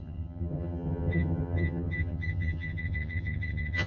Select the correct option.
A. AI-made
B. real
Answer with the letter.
A